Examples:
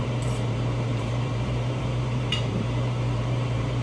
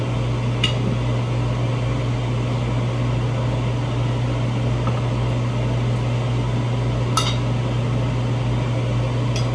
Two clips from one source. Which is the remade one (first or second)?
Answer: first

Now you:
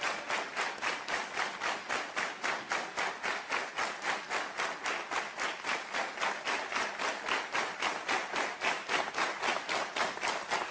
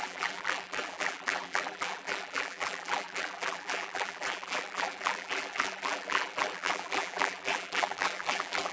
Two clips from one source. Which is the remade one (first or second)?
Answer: second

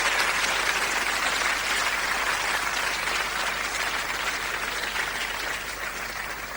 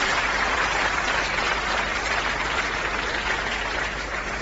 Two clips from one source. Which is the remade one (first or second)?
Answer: second